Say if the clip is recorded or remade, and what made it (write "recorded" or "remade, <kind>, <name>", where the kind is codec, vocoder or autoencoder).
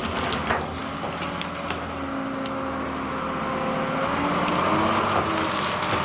recorded